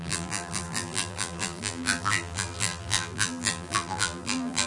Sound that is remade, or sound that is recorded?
remade